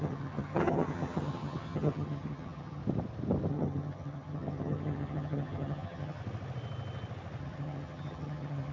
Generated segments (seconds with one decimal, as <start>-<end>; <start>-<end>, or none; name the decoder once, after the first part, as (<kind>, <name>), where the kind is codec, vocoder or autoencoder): 0.0-2.8 (vocoder, HiFi-GAN); 3.5-6.2; 7.4-8.7